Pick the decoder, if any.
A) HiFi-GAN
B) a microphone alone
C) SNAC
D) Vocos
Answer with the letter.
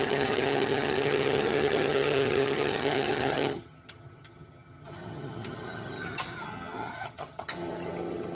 A